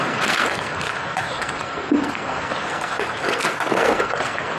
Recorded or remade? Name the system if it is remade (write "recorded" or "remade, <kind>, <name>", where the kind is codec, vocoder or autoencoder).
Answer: remade, codec, SNAC